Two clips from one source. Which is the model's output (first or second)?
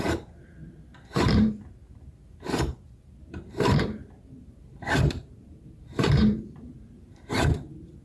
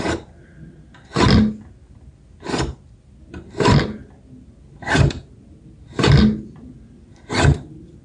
first